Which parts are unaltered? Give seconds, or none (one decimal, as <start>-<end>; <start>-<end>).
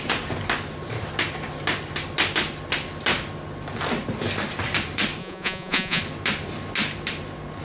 0.0-5.2; 6.0-7.6